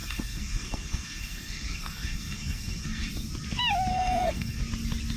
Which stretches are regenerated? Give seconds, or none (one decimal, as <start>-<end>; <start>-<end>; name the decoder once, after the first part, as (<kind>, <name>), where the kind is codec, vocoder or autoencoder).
0.0-3.1 (codec, SNAC); 3.9-4.6